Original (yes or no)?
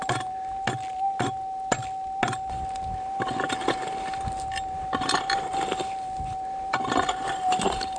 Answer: yes